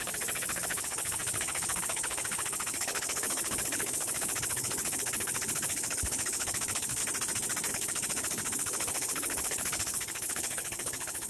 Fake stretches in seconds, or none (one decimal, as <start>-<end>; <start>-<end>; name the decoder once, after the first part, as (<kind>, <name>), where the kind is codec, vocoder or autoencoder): 0.0-7.0 (codec, HILCodec); 7.7-11.3